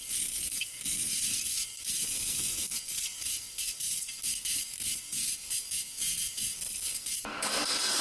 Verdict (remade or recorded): remade